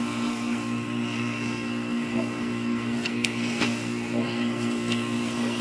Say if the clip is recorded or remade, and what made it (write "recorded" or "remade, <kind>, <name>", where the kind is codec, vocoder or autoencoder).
remade, codec, SNAC